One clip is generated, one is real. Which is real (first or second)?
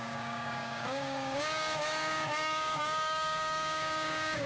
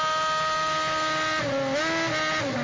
second